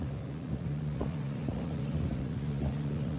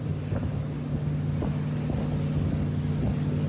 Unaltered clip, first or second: second